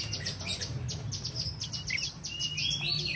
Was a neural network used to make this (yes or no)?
no